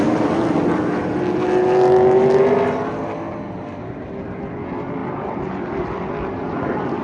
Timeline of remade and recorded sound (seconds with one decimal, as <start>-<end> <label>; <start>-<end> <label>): 0.0-7.0 recorded